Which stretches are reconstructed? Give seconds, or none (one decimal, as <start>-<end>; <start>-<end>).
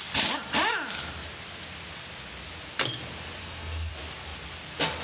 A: 3.4-3.9